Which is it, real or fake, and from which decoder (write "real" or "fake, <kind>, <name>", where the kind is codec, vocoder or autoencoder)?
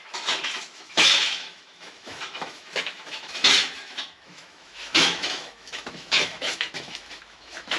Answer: fake, autoencoder, DAC-VAE